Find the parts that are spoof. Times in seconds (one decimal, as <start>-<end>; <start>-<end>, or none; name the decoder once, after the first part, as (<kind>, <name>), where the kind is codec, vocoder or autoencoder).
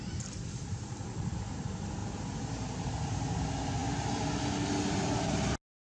2.0-2.7 (vocoder, BigVGAN v2)